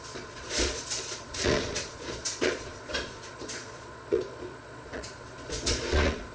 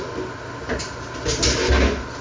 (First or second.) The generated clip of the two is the first